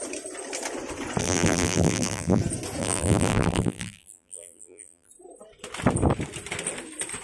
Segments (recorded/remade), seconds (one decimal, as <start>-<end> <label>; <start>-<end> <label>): 0.0-1.2 recorded; 1.2-2.4 remade; 2.4-2.8 recorded; 2.8-5.1 remade; 5.1-7.2 recorded